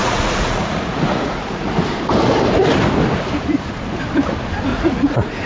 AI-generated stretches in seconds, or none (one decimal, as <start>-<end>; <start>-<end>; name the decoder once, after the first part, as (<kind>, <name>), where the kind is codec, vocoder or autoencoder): 0.0-1.8 (vocoder, Vocos); 4.7-5.5